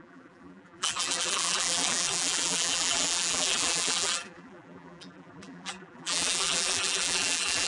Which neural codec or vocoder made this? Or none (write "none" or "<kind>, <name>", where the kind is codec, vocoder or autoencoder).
vocoder, BigVGAN v2